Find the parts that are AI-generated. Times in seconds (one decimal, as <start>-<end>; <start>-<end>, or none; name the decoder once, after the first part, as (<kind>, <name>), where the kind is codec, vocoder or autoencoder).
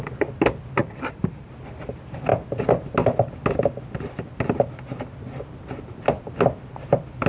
0.8-1.5 (vocoder, BigVGAN v2)